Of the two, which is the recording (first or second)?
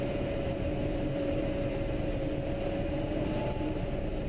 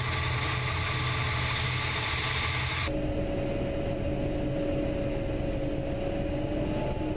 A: second